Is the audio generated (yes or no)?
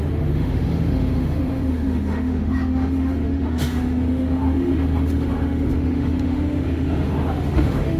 yes